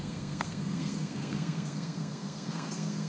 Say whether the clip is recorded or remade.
remade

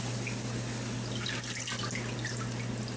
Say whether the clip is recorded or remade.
recorded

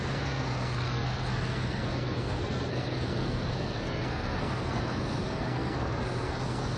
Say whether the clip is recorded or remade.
remade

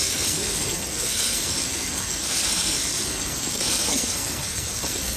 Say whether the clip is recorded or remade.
remade